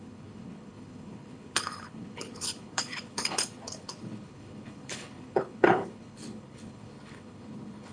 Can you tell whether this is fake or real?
fake